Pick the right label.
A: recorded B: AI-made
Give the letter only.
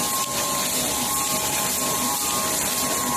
A